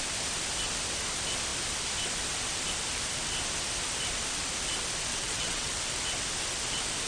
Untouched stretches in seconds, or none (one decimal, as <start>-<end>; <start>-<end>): 0.0-5.1; 5.7-7.1